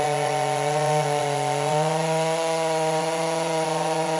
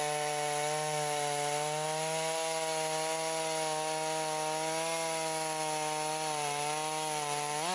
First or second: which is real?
second